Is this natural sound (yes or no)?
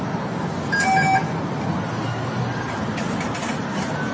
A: yes